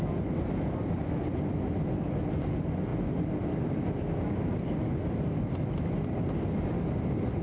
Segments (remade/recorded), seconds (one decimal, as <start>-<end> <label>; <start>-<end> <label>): 0.0-7.4 recorded